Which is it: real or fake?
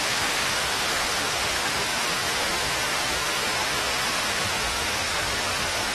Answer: fake